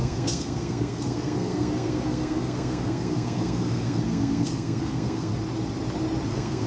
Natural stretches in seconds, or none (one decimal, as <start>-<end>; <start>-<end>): 5.3-6.3